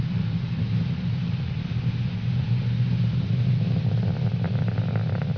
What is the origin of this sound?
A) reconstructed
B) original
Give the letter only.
B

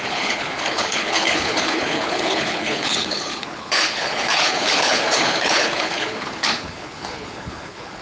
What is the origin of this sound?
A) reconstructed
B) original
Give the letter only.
A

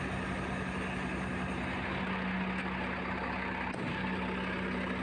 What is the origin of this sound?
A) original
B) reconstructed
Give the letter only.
A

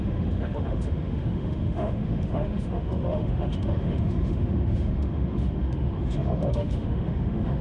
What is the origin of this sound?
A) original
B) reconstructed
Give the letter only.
B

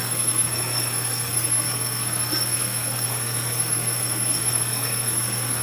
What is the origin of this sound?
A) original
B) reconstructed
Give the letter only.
B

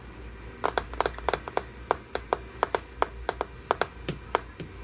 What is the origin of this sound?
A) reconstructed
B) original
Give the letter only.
B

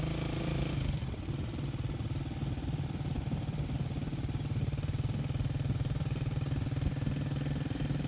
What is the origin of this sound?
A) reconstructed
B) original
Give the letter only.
B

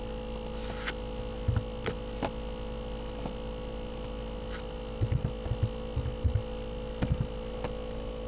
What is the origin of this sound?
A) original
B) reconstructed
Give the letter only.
A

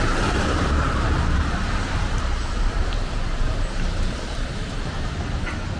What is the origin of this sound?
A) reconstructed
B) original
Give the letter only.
A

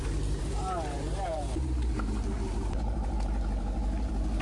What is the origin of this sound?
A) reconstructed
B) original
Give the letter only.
A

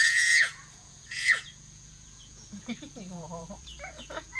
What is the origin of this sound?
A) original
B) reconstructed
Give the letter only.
B